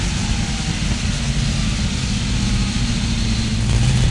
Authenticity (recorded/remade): recorded